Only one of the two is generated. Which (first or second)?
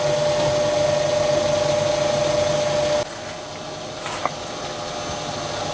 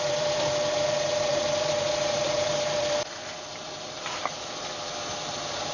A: second